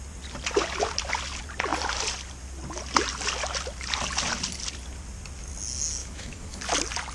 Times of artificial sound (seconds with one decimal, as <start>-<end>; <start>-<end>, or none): 6.0-6.6